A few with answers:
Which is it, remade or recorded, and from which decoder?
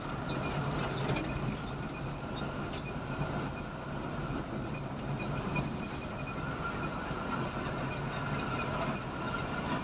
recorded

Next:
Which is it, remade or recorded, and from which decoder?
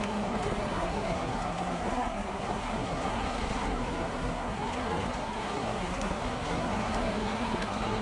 remade, codec, SNAC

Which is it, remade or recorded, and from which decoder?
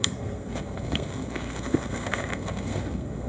remade, codec, SNAC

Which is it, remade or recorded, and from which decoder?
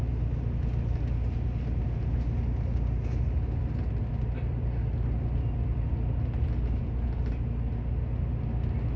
recorded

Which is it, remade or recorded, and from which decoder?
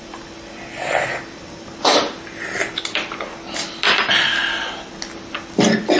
recorded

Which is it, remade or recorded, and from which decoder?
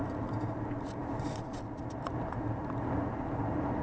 recorded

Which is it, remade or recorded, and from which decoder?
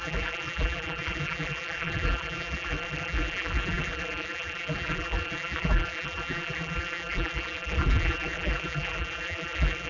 remade, vocoder, BigVGAN v2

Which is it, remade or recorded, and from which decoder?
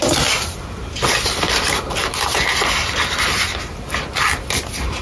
recorded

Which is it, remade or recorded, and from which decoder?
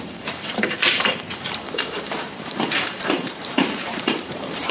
remade, vocoder, BigVGAN v2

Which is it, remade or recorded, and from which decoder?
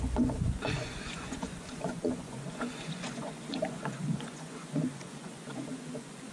remade, vocoder, Vocos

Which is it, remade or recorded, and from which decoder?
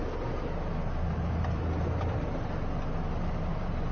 recorded